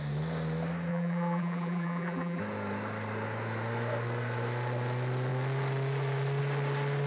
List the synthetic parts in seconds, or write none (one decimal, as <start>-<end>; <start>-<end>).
0.9-2.4